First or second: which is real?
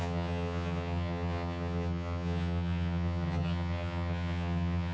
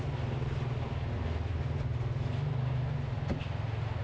second